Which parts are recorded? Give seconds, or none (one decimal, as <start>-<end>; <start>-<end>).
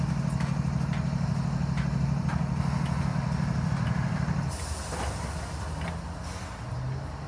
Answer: 0.0-3.1; 5.9-7.3